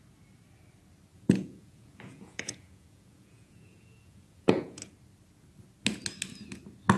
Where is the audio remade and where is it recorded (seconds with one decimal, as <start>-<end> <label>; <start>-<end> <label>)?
0.0-1.1 recorded; 1.1-4.8 remade; 4.8-7.0 recorded